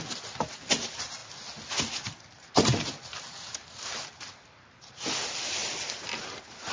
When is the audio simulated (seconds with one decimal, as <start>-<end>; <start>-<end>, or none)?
none